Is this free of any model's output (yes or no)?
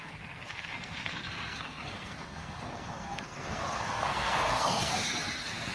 no